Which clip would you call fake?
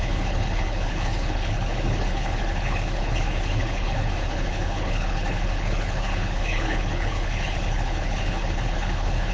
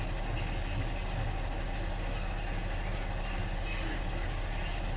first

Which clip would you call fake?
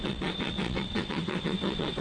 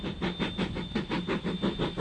first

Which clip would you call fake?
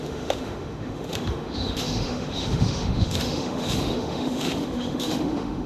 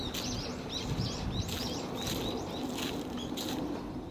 first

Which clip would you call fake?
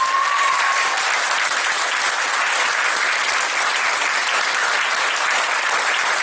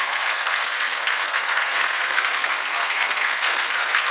second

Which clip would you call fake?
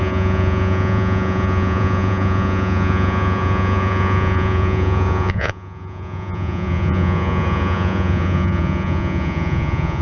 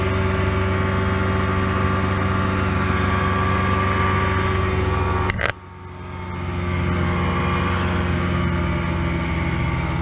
first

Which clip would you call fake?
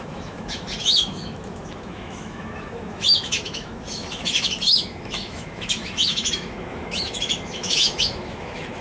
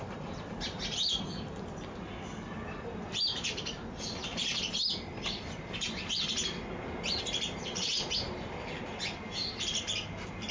first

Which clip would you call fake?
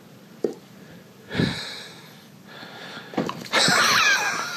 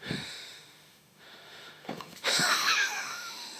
second